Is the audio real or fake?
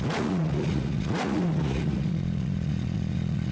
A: fake